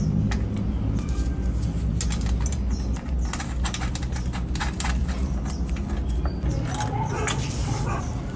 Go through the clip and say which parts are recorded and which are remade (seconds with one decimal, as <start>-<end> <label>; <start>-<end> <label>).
0.0-8.4 recorded